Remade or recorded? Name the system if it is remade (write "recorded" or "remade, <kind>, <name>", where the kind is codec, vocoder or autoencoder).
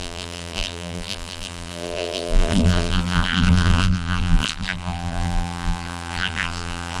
remade, vocoder, BigVGAN v2